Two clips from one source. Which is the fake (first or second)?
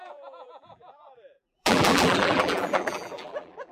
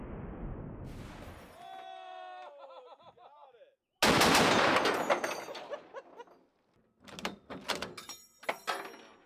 first